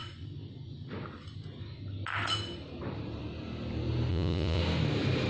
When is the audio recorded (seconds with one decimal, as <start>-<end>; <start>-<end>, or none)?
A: 0.0-4.1; 4.6-5.3